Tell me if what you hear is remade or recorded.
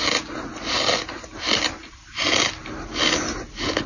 recorded